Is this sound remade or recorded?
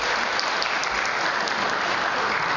recorded